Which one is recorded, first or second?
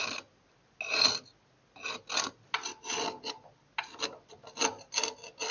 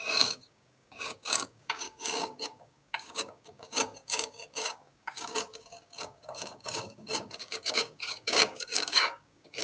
first